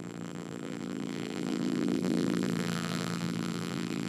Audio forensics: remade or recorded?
remade